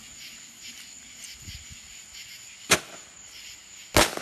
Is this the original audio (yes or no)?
yes